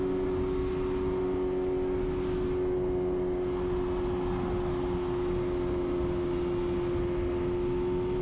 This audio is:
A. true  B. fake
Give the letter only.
A